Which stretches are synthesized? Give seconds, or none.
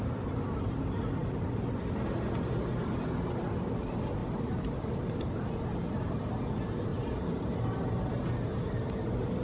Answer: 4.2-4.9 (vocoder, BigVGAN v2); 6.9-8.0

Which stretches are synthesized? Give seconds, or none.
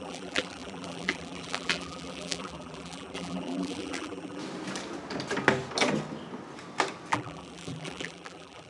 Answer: 0.0-4.4 (vocoder, BigVGAN v2); 7.1-8.7